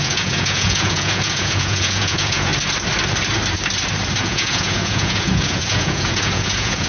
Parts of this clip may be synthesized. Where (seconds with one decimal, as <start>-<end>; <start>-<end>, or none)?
0.0-2.5; 4.2-6.9